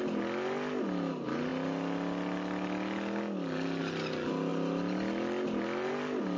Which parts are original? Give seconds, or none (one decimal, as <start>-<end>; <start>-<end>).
0.0-6.4